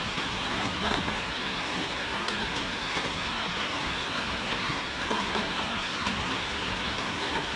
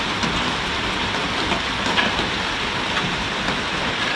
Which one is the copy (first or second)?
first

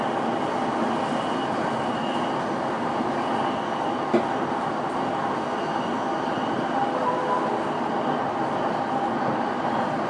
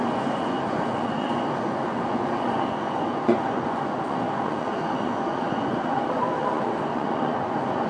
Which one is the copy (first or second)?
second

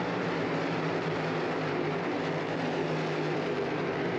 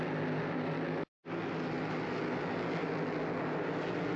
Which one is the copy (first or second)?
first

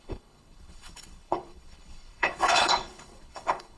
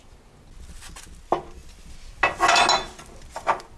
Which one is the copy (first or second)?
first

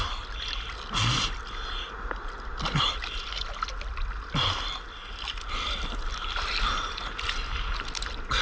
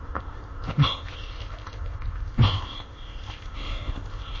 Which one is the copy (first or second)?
second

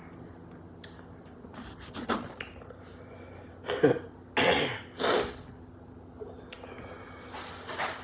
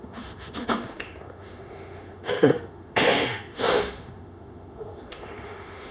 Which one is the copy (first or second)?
second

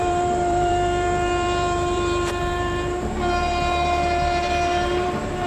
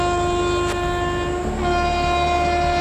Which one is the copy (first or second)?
first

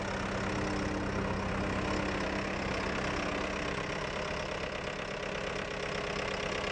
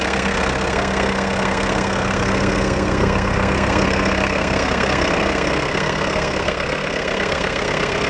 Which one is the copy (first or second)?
second